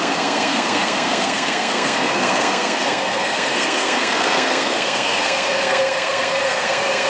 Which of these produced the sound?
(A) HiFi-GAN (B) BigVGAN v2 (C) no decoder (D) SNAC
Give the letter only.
D